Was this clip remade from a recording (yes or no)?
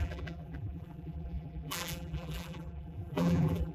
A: yes